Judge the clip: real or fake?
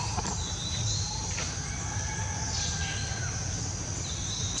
real